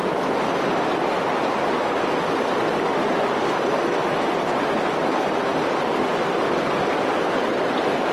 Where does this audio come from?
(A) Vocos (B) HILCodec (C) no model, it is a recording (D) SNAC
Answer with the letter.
C